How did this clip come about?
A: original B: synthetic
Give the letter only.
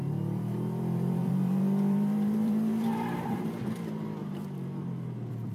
B